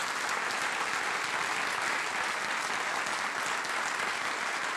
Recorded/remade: recorded